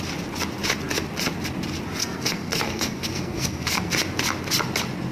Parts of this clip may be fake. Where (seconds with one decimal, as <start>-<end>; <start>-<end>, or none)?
2.0-3.9